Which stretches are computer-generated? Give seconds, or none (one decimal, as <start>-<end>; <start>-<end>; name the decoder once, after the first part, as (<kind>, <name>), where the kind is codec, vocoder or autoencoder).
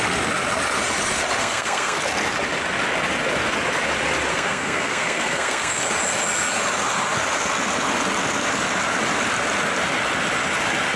1.4-2.0 (codec, SNAC); 4.3-5.8